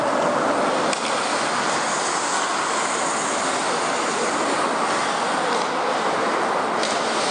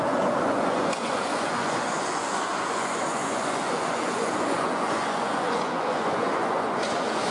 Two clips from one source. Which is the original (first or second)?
first